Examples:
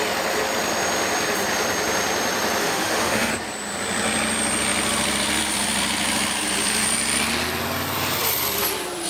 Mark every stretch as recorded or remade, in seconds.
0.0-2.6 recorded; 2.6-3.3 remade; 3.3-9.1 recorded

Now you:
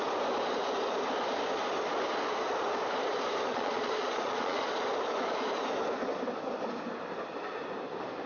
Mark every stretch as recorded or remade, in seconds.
0.0-3.5 recorded; 3.5-4.7 remade; 4.7-8.3 recorded